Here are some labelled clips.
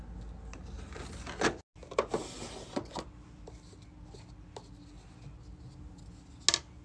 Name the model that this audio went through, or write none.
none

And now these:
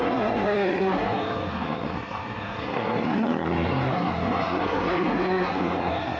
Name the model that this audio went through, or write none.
codec, SNAC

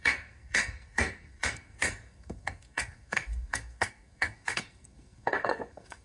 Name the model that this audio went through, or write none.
codec, SNAC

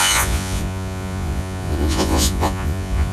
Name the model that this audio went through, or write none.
vocoder, Vocos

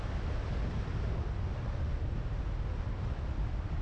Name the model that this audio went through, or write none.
none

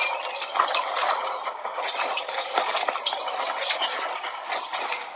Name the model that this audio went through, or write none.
none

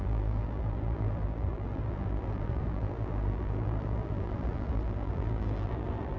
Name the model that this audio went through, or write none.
vocoder, BigVGAN v2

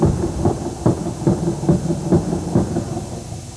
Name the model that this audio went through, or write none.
none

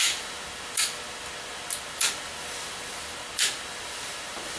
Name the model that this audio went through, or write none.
none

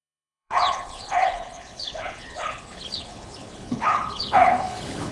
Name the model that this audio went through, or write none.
codec, HILCodec